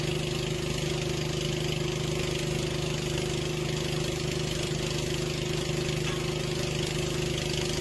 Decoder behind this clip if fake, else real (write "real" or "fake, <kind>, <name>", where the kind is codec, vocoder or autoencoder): real